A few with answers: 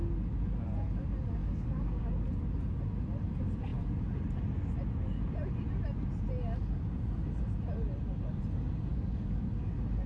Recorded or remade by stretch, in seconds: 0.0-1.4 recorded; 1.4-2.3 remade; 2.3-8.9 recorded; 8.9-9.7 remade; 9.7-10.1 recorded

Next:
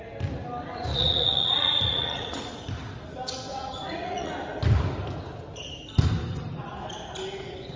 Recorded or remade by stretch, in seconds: 0.0-0.9 recorded; 0.9-2.6 remade; 2.6-3.5 recorded; 3.5-4.3 remade; 4.3-7.8 recorded

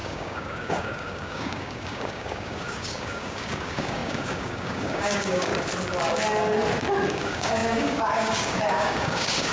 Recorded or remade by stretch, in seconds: 0.0-5.5 remade; 5.5-7.1 recorded; 7.1-9.5 remade

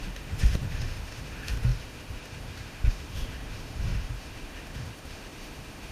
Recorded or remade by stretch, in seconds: 0.0-5.9 remade

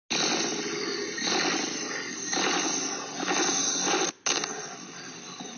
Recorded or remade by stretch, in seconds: 0.0-5.6 recorded